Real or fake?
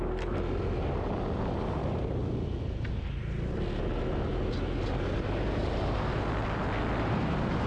real